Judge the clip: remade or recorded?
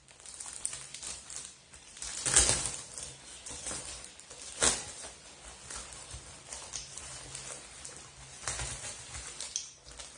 recorded